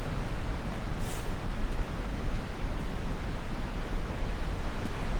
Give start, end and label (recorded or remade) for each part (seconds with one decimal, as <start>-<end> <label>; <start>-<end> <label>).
0.0-1.4 recorded; 1.4-4.5 remade; 4.5-5.2 recorded